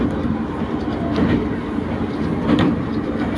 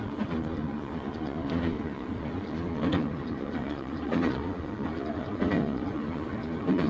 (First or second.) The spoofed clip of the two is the second